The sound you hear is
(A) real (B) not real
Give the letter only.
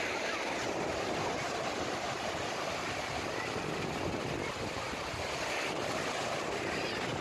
A